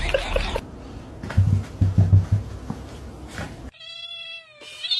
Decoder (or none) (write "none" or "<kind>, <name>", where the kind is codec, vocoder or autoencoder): none